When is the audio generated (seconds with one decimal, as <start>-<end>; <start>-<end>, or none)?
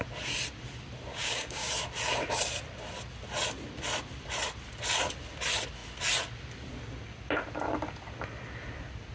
1.1-1.7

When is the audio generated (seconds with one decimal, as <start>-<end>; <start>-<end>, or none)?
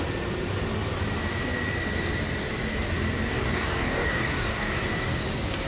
3.3-4.8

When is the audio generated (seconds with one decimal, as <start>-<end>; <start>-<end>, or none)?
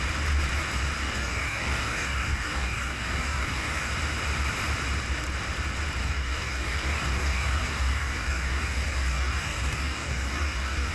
1.0-3.9; 6.0-10.9